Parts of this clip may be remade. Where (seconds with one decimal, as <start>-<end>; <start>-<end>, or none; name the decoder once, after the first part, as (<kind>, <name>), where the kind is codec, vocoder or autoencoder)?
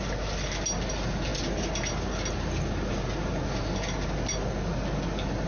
none